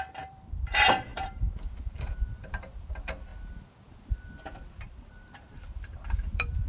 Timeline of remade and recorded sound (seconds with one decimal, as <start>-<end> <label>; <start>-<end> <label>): 0.0-3.3 remade; 3.3-4.8 recorded; 4.8-6.7 remade